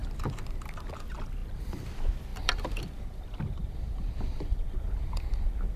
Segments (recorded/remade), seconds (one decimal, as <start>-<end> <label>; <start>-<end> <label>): 0.0-0.9 remade; 0.9-2.3 recorded; 2.3-5.8 remade